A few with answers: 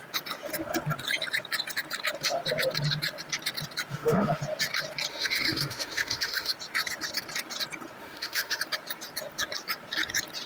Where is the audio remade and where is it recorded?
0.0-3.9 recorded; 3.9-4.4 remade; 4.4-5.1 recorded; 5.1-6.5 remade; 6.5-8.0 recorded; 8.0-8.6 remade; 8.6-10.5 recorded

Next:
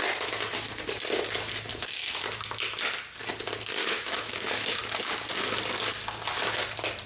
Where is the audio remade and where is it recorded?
0.0-1.7 recorded; 1.7-2.2 remade; 2.2-3.8 recorded; 3.8-4.8 remade; 4.8-7.1 recorded

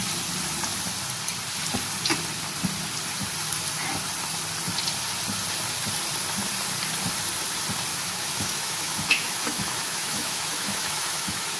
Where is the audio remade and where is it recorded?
0.0-7.9 recorded; 7.9-11.6 remade